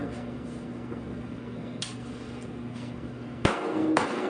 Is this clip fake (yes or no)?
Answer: yes